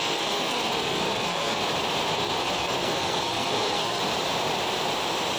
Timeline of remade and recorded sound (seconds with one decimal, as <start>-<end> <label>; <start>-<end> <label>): 0.0-1.6 remade; 1.6-2.1 recorded; 2.1-4.0 remade; 4.0-5.4 recorded